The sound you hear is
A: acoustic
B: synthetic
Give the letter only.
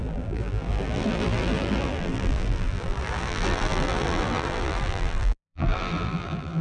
B